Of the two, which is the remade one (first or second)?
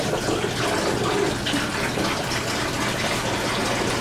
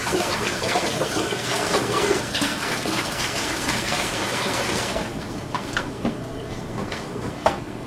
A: second